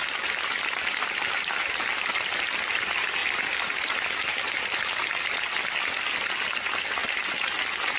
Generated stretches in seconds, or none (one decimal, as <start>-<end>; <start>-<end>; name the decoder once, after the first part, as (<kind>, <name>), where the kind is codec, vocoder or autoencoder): none